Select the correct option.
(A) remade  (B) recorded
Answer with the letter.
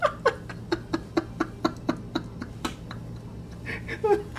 B